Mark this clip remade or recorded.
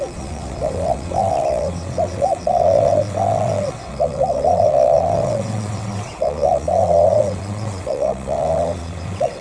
remade